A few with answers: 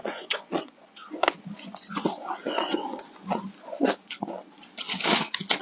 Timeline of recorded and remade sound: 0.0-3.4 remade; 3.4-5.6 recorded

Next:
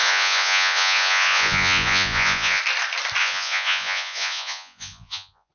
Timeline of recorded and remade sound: 0.0-2.6 remade; 2.6-3.2 recorded; 3.2-5.5 remade